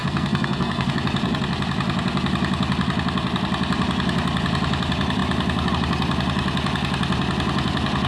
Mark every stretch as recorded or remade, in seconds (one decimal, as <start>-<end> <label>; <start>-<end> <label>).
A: 0.0-0.9 remade; 0.9-8.1 recorded